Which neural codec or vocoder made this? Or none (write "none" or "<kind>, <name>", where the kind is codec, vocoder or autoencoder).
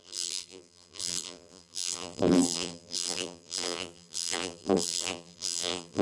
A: vocoder, BigVGAN v2